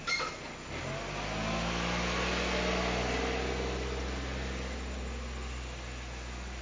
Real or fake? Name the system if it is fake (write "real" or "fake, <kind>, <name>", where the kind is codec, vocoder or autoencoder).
real